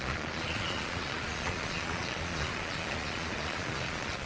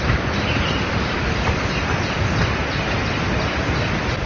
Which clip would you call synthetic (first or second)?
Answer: first